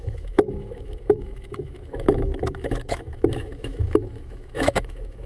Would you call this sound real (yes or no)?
no